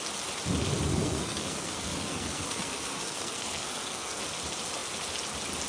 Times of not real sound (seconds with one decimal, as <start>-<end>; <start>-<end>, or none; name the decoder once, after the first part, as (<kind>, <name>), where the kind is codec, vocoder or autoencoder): 0.9-4.2 (codec, SNAC)